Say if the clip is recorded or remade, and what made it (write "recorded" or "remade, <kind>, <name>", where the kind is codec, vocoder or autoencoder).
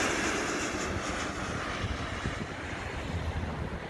recorded